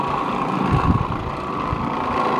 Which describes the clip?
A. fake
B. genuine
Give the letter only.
B